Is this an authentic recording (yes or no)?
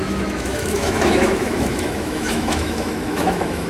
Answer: no